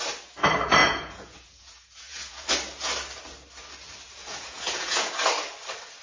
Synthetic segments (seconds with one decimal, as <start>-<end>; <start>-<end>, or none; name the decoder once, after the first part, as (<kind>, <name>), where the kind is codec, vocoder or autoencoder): 0.8-2.5 (vocoder, Vocos); 4.2-5.1